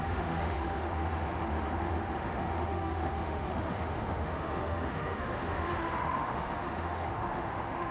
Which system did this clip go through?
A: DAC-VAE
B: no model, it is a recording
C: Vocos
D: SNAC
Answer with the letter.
A